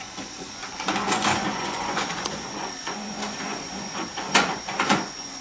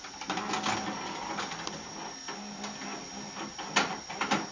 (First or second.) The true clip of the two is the second